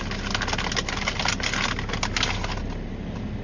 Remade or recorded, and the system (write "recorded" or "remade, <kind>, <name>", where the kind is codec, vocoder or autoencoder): recorded